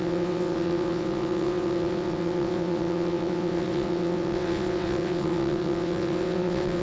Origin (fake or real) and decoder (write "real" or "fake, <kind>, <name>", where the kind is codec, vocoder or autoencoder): fake, vocoder, WaveNeXt